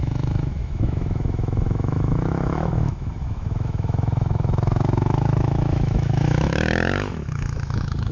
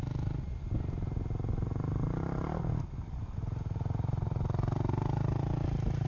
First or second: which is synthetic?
first